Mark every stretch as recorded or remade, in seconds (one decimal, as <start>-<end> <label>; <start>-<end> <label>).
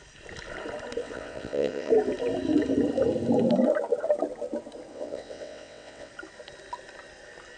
0.0-1.0 recorded; 1.0-1.9 remade; 1.9-4.9 recorded; 4.9-6.1 remade; 6.1-7.6 recorded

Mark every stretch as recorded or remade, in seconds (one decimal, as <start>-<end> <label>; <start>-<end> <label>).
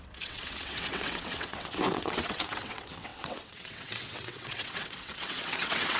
0.0-6.0 remade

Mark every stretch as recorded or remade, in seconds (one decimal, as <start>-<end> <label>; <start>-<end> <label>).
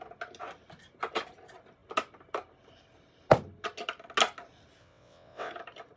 0.0-4.8 recorded; 4.8-5.5 remade; 5.5-6.0 recorded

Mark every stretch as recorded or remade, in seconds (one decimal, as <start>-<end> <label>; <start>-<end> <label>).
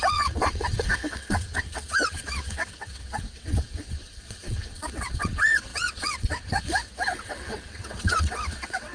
0.0-8.9 remade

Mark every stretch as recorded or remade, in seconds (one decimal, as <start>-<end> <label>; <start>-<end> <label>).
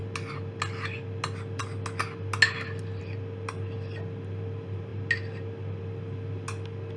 0.0-7.0 recorded